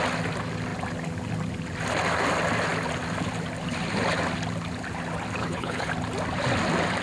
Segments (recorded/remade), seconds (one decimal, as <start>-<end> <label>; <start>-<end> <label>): 0.0-5.4 recorded; 5.4-5.9 remade; 5.9-7.0 recorded